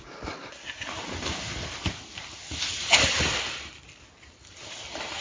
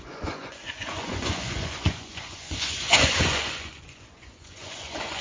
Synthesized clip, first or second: second